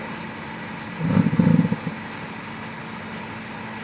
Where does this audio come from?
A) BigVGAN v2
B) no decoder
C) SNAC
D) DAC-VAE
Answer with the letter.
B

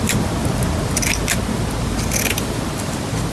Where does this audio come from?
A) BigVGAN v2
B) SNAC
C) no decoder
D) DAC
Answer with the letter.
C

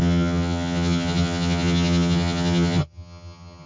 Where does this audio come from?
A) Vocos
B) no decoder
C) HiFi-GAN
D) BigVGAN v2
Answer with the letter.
C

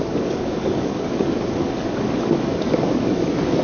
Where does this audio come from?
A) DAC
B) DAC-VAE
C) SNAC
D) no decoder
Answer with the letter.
A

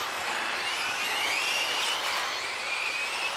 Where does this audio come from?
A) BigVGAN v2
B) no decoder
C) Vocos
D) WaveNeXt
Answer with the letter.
B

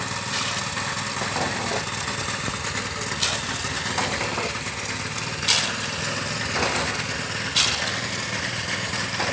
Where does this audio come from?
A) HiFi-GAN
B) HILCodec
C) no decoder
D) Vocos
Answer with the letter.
C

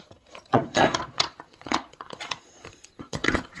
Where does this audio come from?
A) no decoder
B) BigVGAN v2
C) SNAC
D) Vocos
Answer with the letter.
D